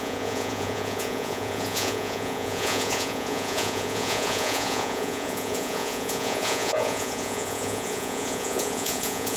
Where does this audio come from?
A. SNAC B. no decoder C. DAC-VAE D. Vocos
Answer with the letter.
D